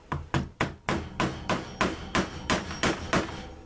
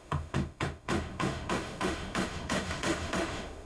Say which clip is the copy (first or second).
second